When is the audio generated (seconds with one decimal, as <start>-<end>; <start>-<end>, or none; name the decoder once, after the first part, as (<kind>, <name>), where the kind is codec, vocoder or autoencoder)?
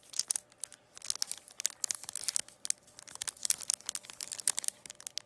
none